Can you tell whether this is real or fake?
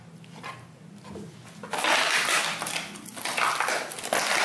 real